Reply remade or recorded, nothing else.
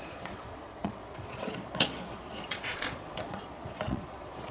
remade